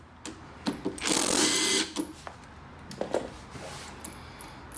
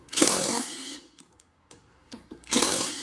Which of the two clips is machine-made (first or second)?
second